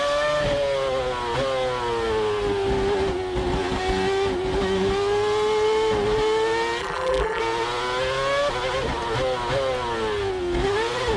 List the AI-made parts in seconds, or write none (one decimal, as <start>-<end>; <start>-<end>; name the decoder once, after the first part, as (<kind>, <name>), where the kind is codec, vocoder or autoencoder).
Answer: 6.8-7.4 (vocoder, BigVGAN v2)